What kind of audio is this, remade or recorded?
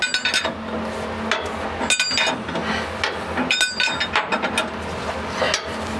recorded